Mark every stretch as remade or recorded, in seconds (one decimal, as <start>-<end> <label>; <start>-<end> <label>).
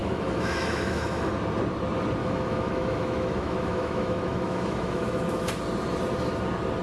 0.0-1.3 remade; 1.3-2.2 recorded; 2.2-5.5 remade; 5.5-6.8 recorded